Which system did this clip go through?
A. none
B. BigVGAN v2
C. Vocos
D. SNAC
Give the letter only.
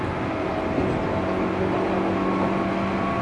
A